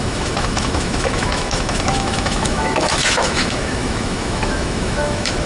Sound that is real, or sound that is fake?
fake